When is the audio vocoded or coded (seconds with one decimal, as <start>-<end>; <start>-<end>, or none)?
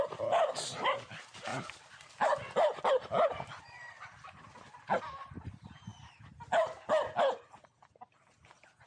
0.0-5.9